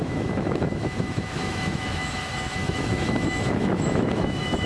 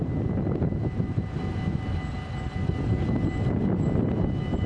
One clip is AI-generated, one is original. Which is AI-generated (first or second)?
first